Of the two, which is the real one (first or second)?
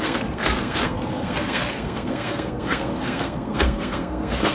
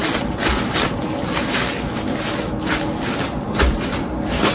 second